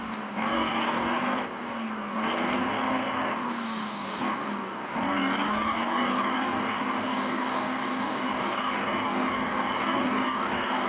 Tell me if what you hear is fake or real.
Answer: fake